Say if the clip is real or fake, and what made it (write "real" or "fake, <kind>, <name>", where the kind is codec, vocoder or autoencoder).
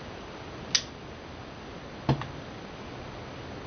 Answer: real